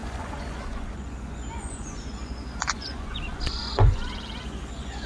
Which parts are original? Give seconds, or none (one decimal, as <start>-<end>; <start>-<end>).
none